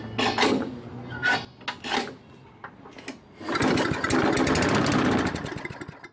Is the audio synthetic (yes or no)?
no